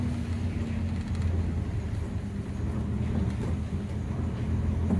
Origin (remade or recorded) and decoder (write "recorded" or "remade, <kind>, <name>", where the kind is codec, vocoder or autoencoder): recorded